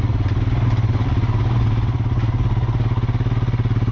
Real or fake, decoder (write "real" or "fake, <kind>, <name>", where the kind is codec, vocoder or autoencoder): real